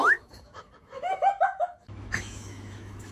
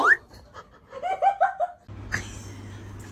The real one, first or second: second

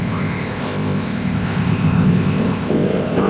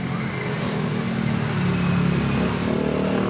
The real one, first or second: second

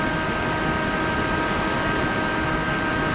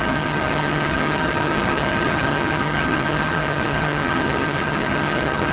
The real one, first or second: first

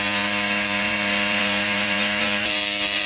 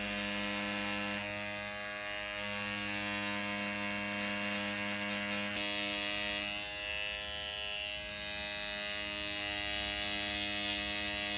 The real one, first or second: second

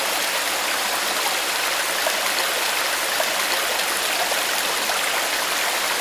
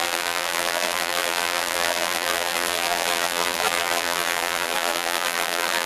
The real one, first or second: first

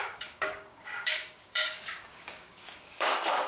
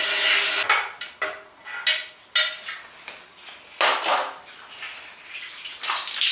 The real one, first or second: second